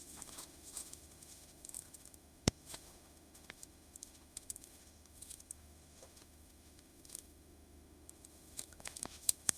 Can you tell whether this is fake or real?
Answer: fake